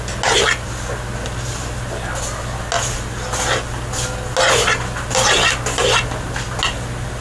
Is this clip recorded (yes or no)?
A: yes